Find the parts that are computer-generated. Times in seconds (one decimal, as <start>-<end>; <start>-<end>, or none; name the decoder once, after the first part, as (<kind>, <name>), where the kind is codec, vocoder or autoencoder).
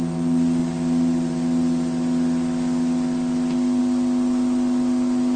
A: none